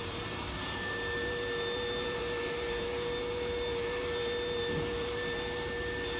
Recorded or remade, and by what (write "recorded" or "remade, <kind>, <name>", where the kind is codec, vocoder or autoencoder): remade, vocoder, BigVGAN v2